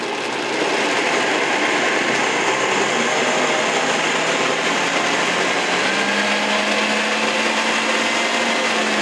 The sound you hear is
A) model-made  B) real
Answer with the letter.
B